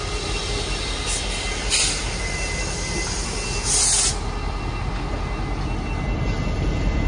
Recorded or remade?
recorded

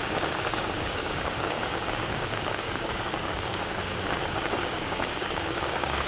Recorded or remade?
remade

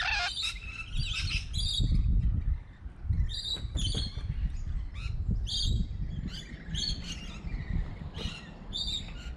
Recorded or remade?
recorded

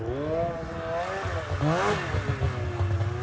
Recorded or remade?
recorded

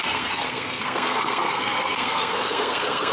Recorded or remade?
remade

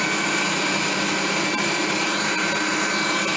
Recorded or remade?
recorded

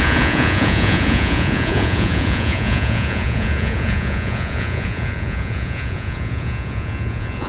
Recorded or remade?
remade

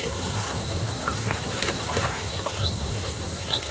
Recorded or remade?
remade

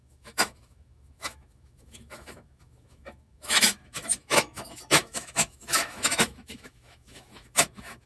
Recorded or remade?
remade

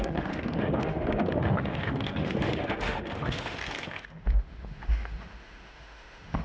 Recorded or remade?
remade